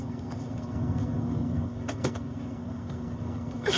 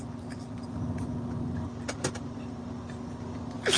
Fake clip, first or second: first